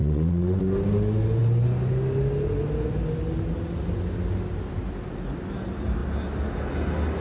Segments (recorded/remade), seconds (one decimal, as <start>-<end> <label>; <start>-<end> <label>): 0.0-0.6 remade; 0.6-7.2 recorded